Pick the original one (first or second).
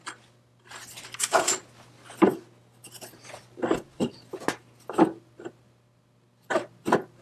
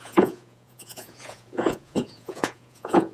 first